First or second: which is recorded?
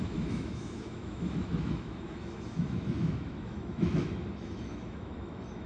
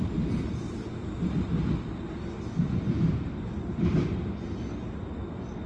second